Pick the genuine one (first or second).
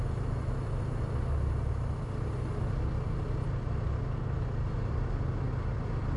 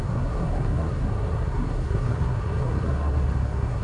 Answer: first